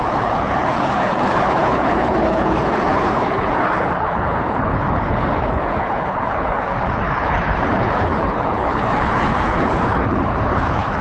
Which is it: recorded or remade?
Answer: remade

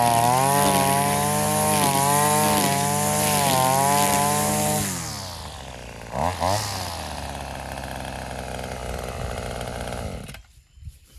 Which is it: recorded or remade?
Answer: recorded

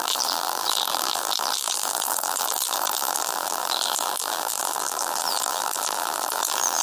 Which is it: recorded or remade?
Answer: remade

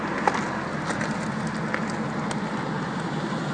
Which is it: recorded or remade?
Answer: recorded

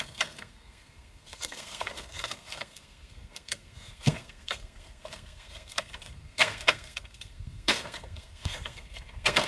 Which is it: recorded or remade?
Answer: remade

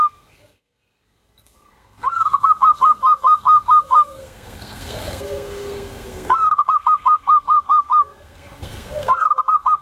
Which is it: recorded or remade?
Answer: remade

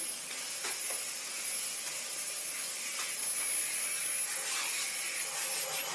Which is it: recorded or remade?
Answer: recorded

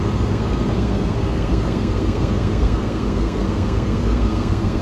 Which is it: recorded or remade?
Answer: remade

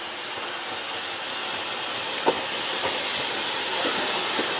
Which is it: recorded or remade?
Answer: recorded